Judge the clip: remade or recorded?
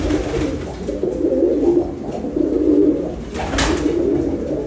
recorded